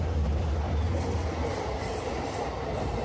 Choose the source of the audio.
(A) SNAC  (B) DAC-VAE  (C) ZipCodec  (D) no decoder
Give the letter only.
D